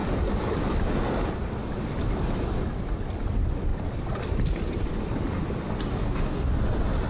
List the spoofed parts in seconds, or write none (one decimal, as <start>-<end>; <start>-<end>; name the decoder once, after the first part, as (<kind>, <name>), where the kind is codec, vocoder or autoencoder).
6.0-6.6 (codec, DAC)